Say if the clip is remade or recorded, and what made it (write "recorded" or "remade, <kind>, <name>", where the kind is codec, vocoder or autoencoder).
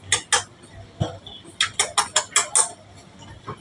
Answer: recorded